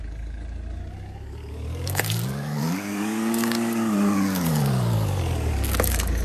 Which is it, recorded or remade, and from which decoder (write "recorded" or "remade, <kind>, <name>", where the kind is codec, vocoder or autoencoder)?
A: remade, codec, DAC